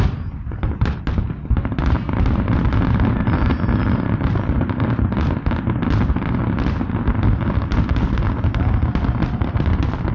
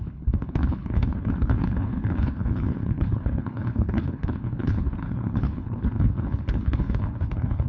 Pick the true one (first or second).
first